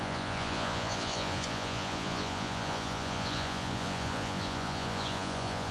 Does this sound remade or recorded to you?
remade